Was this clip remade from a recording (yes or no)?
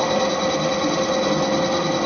no